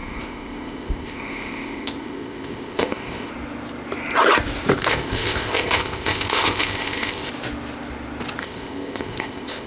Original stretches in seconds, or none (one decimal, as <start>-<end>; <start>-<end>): 3.3-4.9; 7.3-8.4